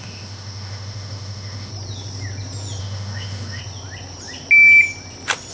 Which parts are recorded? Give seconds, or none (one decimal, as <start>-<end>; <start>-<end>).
1.7-2.8; 3.6-5.5